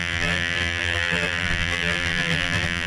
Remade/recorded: remade